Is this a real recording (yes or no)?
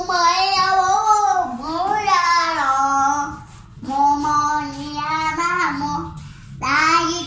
yes